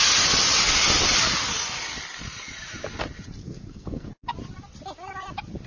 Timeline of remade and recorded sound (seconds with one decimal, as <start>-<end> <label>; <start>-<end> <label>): 0.0-3.4 recorded; 3.4-4.1 remade; 4.1-5.7 recorded